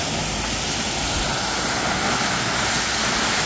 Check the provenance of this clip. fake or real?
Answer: real